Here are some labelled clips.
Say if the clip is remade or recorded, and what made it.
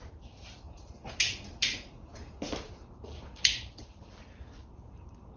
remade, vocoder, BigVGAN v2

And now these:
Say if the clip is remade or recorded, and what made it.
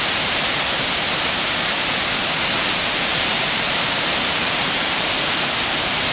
remade, vocoder, BigVGAN v2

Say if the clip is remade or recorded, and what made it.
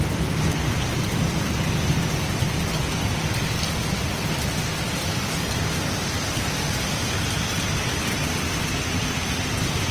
recorded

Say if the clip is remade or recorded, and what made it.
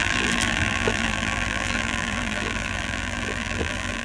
remade, vocoder, BigVGAN v2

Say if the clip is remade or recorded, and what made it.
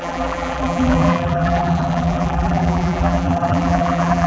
remade, vocoder, BigVGAN v2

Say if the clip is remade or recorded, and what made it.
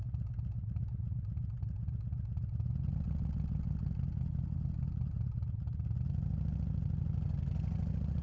recorded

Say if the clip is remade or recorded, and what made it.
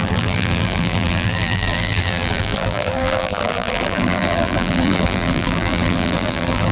remade, vocoder, BigVGAN v2